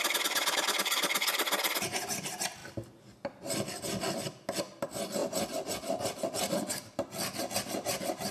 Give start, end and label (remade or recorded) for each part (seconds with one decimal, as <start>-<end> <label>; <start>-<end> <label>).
0.0-8.3 recorded